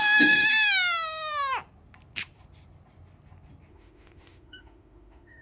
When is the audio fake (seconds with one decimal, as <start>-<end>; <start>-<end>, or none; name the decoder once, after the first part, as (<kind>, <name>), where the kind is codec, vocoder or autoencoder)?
0.0-0.5 (autoencoder, DAC-VAE); 3.7-5.4